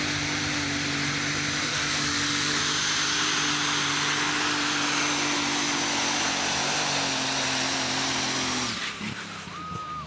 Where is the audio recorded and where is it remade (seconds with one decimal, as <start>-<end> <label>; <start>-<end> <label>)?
0.0-1.7 recorded; 1.7-2.6 remade; 2.6-10.1 recorded